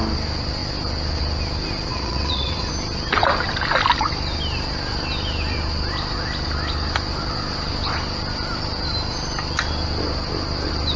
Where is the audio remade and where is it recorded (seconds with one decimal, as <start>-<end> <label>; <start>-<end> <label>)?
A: 0.0-1.9 recorded; 1.9-2.7 remade; 2.7-11.0 recorded

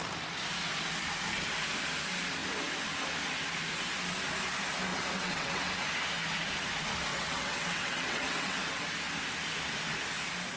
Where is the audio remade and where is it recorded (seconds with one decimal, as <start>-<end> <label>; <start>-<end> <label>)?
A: 0.0-4.9 recorded; 4.9-5.7 remade; 5.7-7.1 recorded; 7.1-8.8 remade; 8.8-10.6 recorded

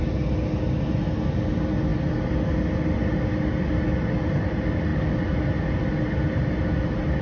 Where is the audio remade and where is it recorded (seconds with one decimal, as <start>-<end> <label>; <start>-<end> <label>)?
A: 0.0-7.2 recorded

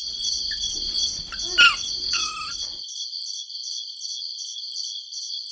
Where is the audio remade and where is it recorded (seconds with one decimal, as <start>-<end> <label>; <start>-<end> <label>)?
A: 0.0-1.1 remade; 1.1-1.9 recorded; 1.9-2.3 remade; 2.3-5.5 recorded

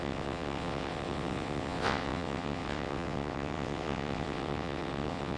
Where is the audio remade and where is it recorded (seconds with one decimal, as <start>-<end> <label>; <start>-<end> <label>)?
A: 0.0-5.4 remade